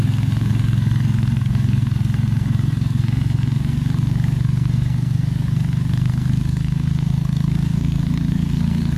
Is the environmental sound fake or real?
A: fake